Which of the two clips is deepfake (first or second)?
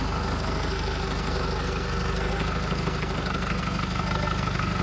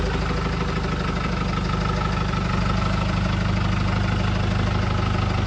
first